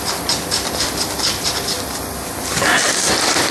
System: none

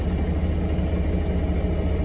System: none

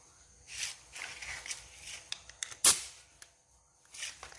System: none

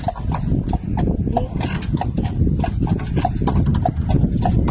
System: none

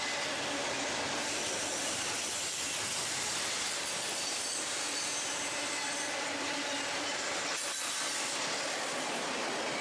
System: none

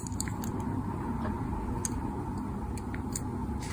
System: none